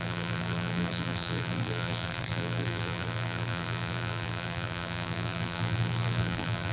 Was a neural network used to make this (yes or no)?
yes